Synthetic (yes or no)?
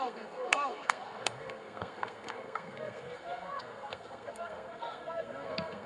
yes